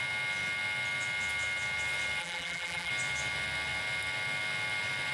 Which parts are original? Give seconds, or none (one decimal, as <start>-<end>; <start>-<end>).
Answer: 0.0-2.2; 2.9-5.1